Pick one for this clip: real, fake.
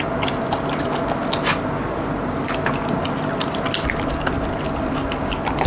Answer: real